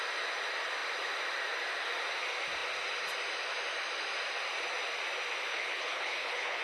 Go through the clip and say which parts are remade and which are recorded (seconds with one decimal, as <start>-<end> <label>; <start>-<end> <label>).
0.0-5.5 recorded; 5.5-6.6 remade